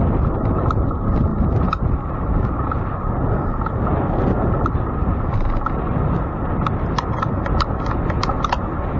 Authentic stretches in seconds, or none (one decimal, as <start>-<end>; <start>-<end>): 0.0-1.3; 3.0-9.0